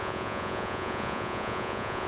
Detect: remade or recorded remade